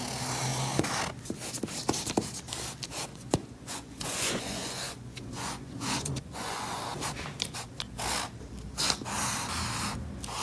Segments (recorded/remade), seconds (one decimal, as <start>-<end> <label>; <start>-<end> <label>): 0.0-3.1 recorded; 3.1-6.8 remade; 6.8-10.4 recorded